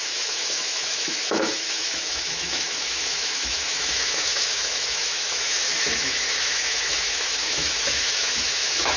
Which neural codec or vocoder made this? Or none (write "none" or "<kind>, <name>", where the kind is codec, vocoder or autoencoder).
autoencoder, DAC-VAE